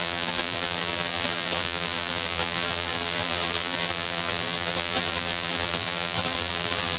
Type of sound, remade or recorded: remade